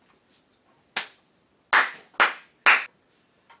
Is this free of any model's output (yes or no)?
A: yes